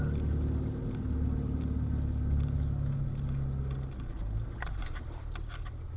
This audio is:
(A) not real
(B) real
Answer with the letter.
B